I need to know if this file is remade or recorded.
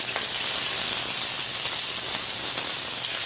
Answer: recorded